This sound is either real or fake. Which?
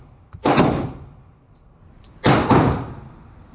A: real